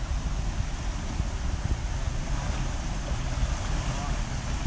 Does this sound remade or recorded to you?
recorded